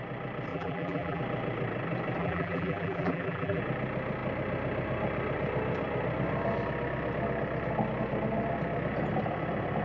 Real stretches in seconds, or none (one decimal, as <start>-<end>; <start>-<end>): 0.0-0.5; 1.2-2.2; 3.6-9.8